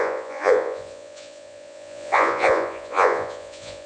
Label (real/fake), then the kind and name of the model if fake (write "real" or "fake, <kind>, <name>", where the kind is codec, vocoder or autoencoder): fake, vocoder, Vocos